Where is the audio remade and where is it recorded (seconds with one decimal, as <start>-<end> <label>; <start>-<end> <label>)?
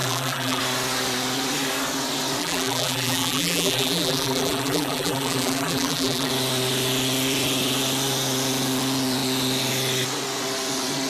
0.0-0.6 remade; 0.6-2.4 recorded; 2.4-6.3 remade; 6.3-11.1 recorded